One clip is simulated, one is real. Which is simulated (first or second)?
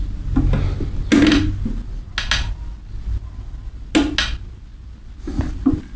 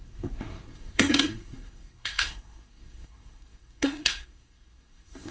second